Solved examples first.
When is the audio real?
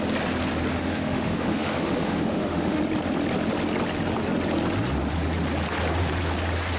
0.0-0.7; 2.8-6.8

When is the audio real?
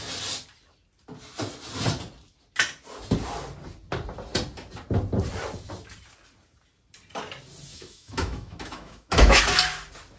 0.0-7.7; 9.4-10.2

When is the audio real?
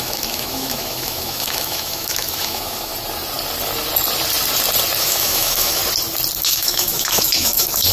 2.9-5.0; 5.8-6.4